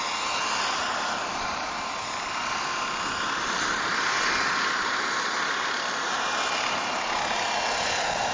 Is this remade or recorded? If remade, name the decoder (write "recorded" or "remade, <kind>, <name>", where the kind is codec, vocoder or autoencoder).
recorded